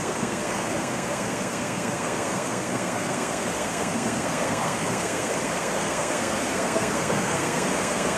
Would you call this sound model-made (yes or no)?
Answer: yes